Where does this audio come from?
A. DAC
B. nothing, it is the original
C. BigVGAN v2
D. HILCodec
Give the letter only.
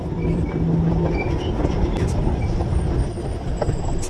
B